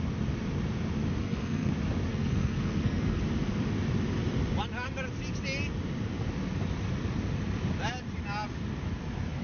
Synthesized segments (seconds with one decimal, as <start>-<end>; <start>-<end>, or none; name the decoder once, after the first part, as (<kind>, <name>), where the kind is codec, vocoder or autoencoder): 1.2-1.7 (codec, SNAC); 2.1-3.2

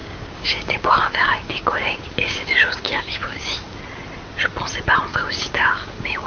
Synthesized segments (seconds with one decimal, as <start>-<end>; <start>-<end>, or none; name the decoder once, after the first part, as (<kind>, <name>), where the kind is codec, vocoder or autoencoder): 0.0-3.8 (codec, DAC); 5.1-6.3

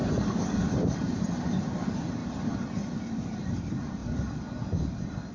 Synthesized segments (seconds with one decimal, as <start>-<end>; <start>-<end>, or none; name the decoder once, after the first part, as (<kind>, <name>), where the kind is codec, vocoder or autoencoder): 0.0-2.2 (vocoder, BigVGAN v2); 3.1-4.0

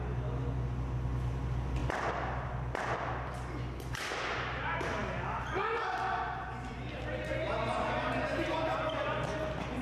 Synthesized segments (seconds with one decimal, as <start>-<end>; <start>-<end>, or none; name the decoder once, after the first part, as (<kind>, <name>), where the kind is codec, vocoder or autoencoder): none

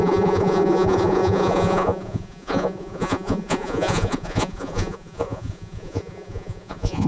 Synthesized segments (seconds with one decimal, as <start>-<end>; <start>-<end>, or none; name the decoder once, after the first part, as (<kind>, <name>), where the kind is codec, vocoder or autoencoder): 0.0-7.1 (vocoder, Vocos)

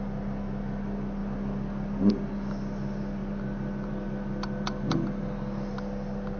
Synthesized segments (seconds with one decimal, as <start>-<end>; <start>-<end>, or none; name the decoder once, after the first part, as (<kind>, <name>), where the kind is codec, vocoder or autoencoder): none

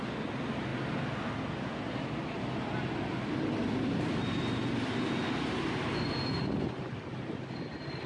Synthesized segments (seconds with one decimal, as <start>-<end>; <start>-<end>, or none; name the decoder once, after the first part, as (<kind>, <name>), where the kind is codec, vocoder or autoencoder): none